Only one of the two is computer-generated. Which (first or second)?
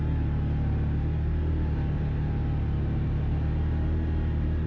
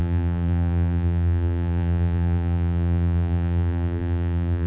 second